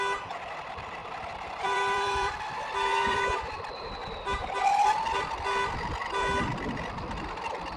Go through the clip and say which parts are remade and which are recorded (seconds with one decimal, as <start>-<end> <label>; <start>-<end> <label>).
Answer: 0.0-1.0 recorded; 1.0-2.3 remade; 2.3-2.9 recorded; 2.9-3.4 remade; 3.4-4.0 recorded; 4.0-4.6 remade; 4.6-7.8 recorded